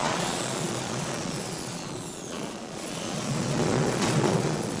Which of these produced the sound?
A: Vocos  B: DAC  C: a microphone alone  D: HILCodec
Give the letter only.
A